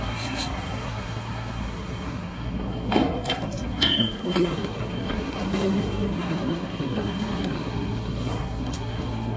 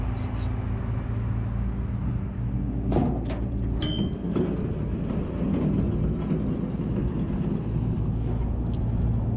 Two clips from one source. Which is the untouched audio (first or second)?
second